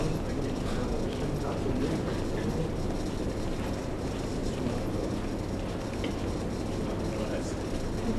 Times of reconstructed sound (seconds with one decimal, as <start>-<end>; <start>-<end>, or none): 4.4-5.1